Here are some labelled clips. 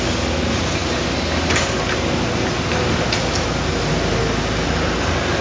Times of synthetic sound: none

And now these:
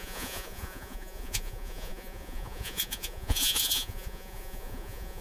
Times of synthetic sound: 0.0-5.2 (vocoder, Vocos)

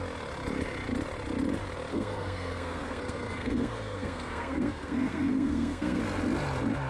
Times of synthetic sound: 1.9-6.0 (codec, SNAC)

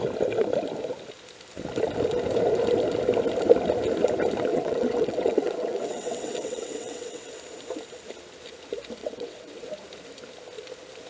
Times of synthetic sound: 4.5-7.3 (vocoder, WaveNeXt); 9.0-9.6

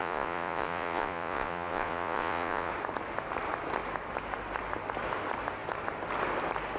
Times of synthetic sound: 0.0-2.7 (vocoder, Vocos)

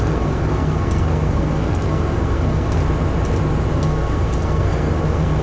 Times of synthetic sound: 0.0-2.8 (codec, SNAC); 3.7-5.4

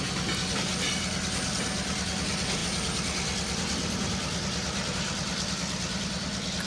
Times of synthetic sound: none